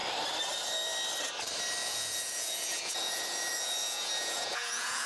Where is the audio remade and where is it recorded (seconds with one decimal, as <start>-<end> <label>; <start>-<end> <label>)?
0.0-1.8 recorded; 1.8-5.1 remade